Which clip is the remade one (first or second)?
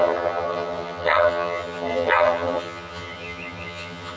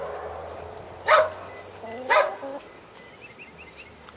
first